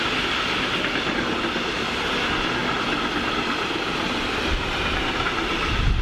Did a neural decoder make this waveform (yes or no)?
no